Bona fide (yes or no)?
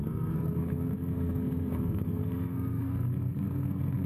no